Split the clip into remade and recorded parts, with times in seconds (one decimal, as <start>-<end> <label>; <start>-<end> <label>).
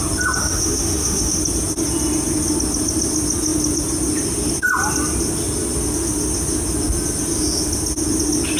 0.0-0.4 recorded; 0.4-1.4 remade; 1.4-8.6 recorded